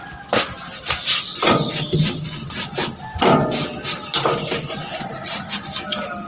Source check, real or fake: real